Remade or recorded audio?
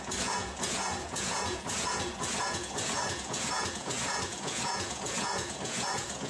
remade